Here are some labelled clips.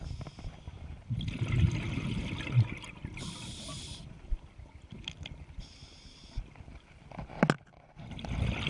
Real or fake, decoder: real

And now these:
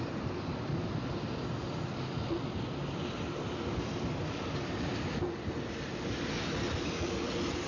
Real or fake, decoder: real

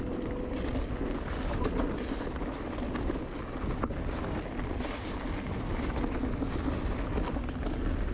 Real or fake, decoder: real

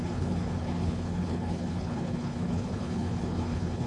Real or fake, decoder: fake, codec, HILCodec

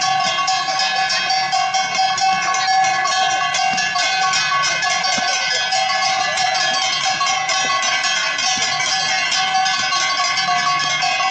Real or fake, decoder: real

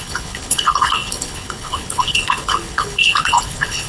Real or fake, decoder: fake, codec, HILCodec